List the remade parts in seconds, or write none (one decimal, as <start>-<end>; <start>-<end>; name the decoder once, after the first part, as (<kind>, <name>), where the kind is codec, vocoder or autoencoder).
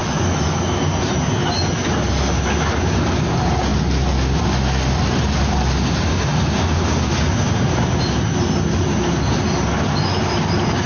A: 0.0-0.8 (autoencoder, DAC-VAE)